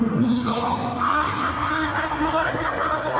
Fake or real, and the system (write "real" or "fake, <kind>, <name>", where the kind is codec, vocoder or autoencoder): fake, codec, SNAC